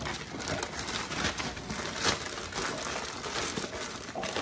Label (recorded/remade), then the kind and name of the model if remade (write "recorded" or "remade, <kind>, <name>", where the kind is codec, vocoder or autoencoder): recorded